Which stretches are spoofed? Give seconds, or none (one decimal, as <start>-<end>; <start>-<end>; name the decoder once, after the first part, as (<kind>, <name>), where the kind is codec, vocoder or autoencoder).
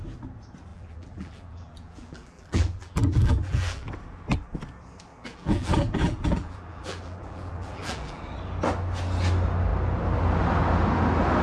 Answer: 0.7-3.9 (vocoder, BigVGAN v2); 5.1-8.2